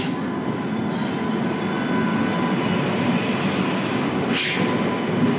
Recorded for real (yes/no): yes